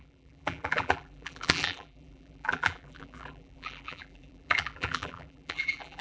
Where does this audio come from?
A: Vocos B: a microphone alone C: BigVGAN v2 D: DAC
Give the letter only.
C